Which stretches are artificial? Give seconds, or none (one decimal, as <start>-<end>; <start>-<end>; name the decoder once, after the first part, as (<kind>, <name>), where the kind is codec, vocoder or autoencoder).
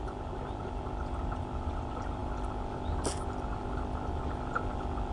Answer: none